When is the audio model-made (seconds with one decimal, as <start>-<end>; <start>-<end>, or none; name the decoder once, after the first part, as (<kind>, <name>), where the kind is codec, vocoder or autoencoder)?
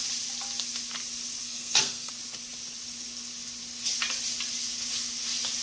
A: 1.4-2.1 (codec, SNAC)